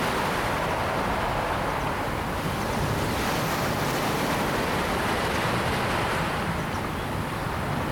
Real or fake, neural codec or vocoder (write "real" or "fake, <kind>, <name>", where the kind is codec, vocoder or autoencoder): real